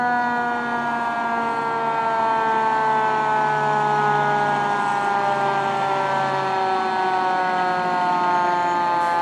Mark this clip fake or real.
real